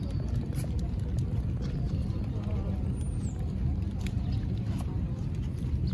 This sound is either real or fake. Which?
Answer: real